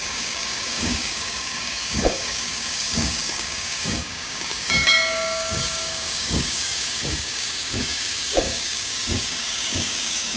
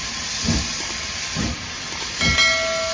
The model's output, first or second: first